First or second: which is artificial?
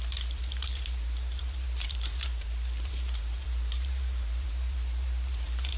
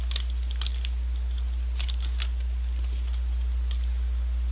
first